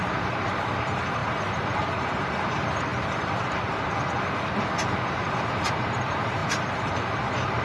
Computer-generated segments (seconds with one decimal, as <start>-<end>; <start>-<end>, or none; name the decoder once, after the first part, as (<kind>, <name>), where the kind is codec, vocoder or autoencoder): 0.0-2.9 (vocoder, BigVGAN v2); 5.7-7.6